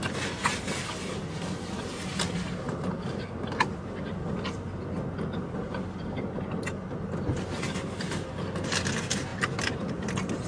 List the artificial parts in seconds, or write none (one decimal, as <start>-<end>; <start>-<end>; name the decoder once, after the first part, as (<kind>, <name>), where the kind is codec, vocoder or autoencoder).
none